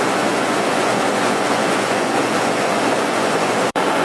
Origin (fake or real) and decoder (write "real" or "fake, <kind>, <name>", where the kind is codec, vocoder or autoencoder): fake, vocoder, Vocos